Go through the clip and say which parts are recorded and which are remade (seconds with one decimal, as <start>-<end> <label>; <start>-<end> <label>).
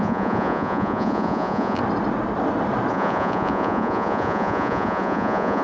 0.0-1.8 remade; 1.8-2.9 recorded; 2.9-5.6 remade